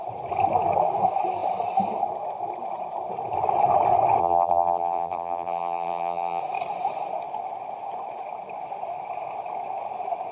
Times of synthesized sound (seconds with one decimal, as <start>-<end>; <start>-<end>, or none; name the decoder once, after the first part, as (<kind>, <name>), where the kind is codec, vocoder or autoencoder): 4.2-6.4 (vocoder, BigVGAN v2)